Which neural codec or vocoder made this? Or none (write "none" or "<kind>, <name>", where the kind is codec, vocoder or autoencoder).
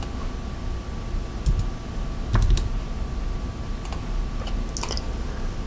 none